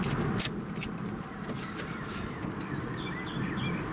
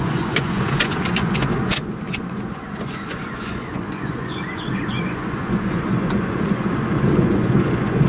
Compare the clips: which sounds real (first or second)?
first